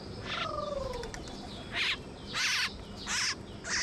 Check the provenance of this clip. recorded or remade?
recorded